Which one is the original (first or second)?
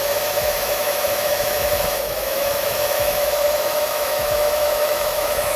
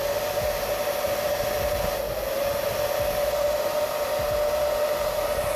second